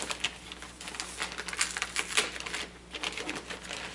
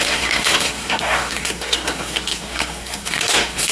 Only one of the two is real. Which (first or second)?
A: first